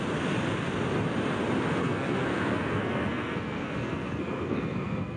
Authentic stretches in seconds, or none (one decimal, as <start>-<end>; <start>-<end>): 0.0-1.8